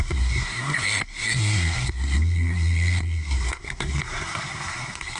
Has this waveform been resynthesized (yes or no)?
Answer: yes